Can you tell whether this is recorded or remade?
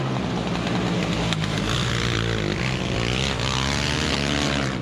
recorded